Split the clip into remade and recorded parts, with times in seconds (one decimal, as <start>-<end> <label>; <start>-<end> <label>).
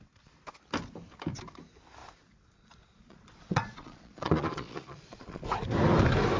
0.0-2.0 recorded; 2.0-5.4 remade; 5.4-6.4 recorded